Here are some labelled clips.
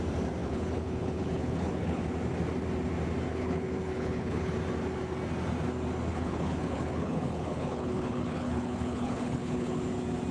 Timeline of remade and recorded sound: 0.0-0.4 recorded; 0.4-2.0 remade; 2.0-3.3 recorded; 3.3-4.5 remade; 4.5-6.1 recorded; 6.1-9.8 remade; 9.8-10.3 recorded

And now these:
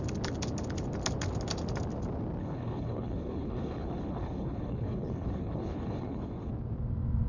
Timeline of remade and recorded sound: 0.0-2.4 recorded; 2.4-6.5 remade; 6.5-7.3 recorded

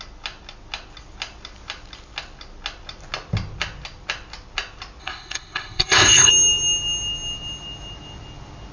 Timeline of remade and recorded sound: 0.0-5.0 recorded; 5.0-6.3 remade; 6.3-8.7 recorded

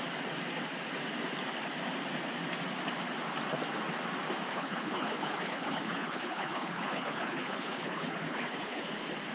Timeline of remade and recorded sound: 0.0-4.5 recorded; 4.5-8.8 remade; 8.8-9.3 recorded